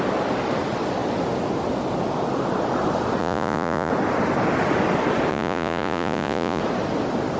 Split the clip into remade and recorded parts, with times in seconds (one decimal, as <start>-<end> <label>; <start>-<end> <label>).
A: 0.0-3.2 recorded; 3.2-3.9 remade; 3.9-5.3 recorded; 5.3-6.6 remade; 6.6-7.4 recorded